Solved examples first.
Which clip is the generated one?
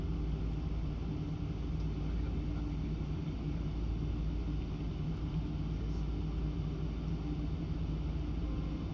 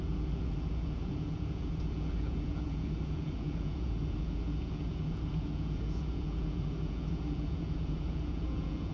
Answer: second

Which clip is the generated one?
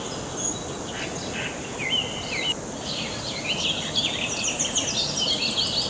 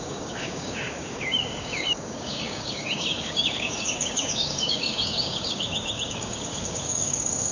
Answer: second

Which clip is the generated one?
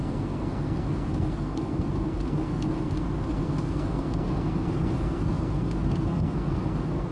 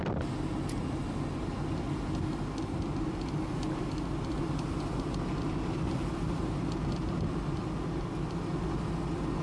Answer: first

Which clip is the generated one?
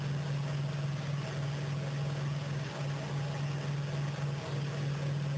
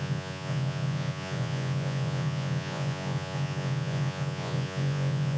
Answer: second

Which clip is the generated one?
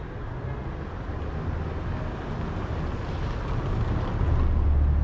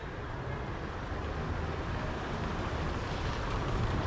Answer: second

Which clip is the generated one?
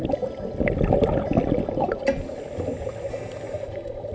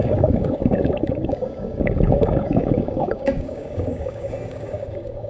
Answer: second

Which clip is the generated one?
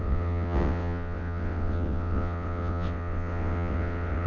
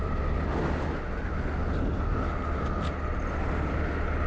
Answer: first